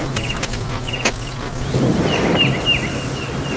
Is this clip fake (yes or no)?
no